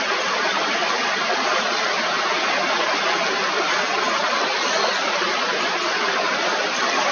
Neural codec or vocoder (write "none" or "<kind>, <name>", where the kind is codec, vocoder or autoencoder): none